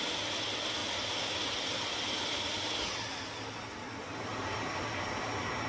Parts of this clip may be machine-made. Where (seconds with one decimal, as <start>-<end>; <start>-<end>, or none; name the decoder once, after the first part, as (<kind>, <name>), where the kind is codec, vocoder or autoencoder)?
none